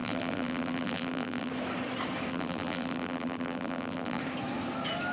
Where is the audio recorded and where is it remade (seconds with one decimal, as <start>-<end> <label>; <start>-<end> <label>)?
0.0-1.5 remade; 1.5-2.3 recorded; 2.3-4.2 remade; 4.2-5.1 recorded